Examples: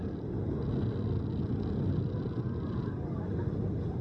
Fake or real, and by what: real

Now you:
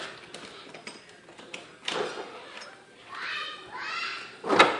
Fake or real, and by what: real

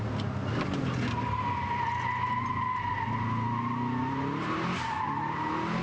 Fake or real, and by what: real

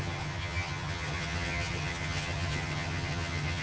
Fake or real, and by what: fake, vocoder, HiFi-GAN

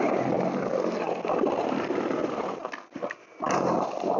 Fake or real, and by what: real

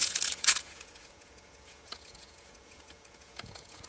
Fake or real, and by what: fake, vocoder, Vocos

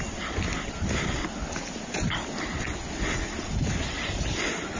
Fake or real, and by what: real